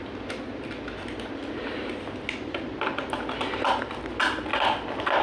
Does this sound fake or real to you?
real